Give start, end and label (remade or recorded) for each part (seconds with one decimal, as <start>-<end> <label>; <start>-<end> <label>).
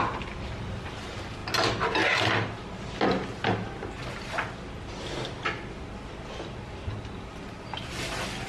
0.0-8.5 recorded